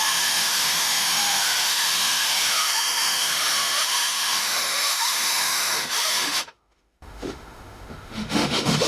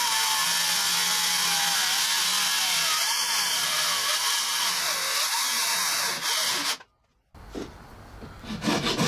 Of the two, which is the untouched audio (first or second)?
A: second